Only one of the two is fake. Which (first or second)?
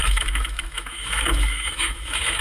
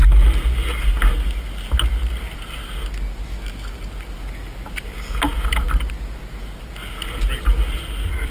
first